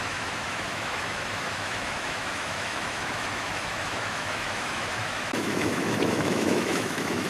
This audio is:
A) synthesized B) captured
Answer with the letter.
A